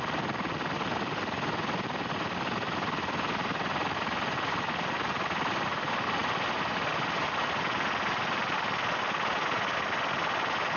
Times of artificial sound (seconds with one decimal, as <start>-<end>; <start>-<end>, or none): none